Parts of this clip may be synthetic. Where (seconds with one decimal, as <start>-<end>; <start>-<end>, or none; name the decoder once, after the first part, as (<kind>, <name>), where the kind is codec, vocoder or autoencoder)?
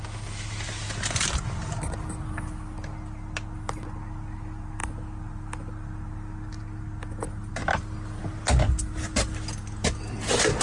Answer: none